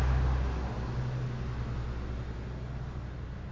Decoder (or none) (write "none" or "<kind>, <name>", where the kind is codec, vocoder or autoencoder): none